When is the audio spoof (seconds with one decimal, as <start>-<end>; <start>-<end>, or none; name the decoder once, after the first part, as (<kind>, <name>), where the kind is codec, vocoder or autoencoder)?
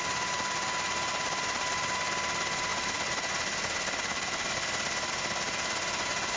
1.1-1.8 (vocoder, BigVGAN v2); 2.7-5.1